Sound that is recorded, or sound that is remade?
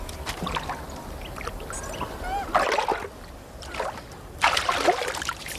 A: recorded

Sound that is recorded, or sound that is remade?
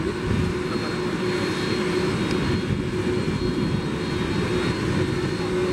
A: recorded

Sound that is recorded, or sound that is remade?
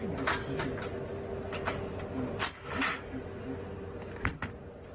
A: recorded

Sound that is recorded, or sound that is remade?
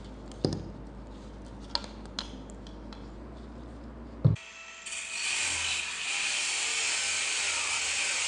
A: recorded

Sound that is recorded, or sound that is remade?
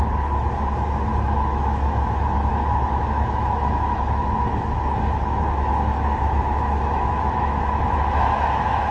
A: remade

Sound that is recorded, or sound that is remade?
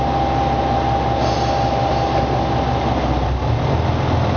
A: recorded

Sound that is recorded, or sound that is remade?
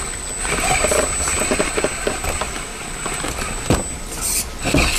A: recorded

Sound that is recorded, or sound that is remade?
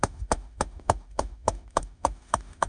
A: remade